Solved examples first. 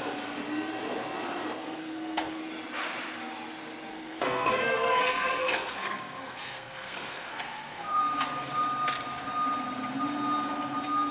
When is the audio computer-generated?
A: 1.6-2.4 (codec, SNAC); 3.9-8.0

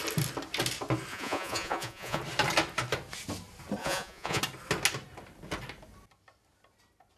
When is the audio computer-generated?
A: 1.1-2.2 (vocoder, Vocos); 3.8-4.4

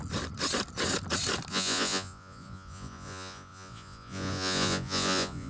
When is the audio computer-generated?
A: 1.5-5.5 (vocoder, Vocos)

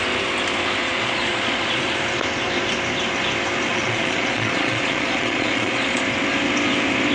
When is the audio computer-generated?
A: 0.8-1.9 (vocoder, Vocos); 3.7-6.0

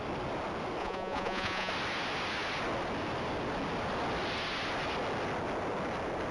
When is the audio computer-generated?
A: 0.8-1.7 (vocoder, Vocos)

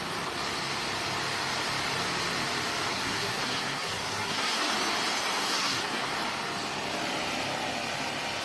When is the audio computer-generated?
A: 2.9-4.7 (codec, SNAC); 5.4-6.1